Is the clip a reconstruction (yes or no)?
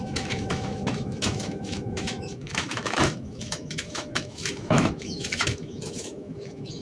yes